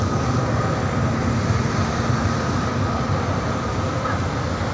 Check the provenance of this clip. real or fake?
real